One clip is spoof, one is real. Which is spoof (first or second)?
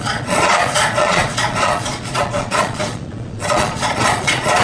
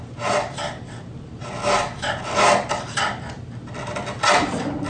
first